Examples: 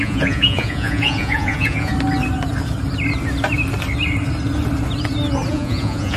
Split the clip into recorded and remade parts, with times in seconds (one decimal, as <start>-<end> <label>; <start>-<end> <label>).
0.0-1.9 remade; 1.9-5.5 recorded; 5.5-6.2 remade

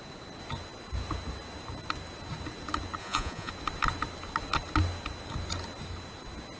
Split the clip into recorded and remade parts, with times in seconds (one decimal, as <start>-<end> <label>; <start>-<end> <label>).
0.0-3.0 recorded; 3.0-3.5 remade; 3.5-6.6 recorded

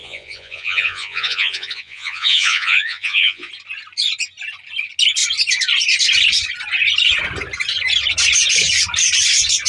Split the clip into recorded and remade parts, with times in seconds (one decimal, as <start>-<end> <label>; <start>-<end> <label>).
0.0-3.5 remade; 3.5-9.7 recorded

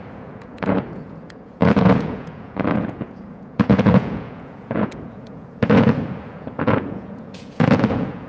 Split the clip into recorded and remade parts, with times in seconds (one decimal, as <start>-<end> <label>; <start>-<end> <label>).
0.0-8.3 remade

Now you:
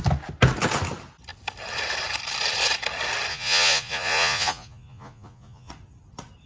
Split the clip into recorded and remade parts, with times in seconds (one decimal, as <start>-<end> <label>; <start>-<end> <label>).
0.0-3.3 recorded; 3.3-5.7 remade; 5.7-6.5 recorded

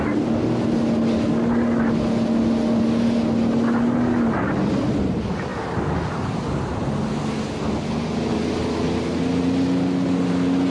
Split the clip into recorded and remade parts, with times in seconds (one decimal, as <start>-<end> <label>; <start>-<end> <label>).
0.0-10.7 recorded